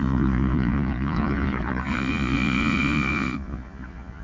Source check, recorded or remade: remade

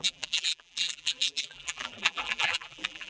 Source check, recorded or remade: remade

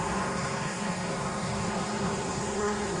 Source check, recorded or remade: remade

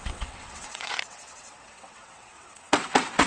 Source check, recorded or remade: remade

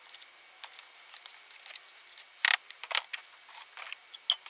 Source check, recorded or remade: recorded